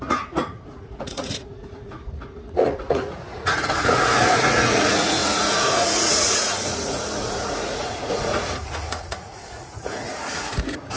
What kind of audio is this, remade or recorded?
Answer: remade